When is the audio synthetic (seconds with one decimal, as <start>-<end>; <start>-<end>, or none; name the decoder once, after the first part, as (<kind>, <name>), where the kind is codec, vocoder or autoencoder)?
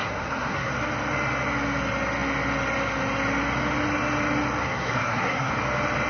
0.0-0.7 (codec, SNAC); 4.6-5.5